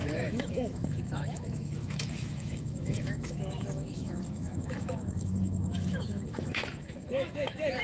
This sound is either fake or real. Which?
fake